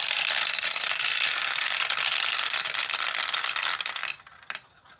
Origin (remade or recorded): recorded